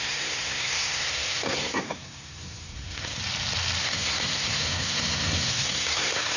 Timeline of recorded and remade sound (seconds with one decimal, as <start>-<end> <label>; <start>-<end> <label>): 0.0-3.2 remade; 3.2-3.8 recorded; 3.8-6.4 remade